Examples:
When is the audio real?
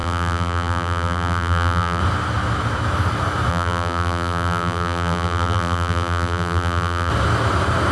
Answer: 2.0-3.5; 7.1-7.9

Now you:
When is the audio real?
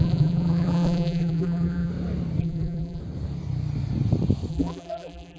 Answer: 1.9-2.4; 3.0-4.5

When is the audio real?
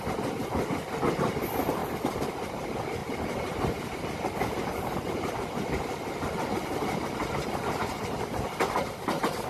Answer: 0.0-3.0; 4.0-9.5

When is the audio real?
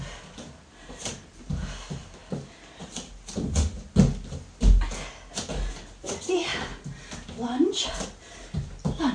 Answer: 2.2-5.7; 6.7-7.9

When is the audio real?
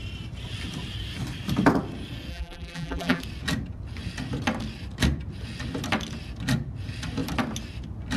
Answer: 0.0-2.3; 3.2-8.2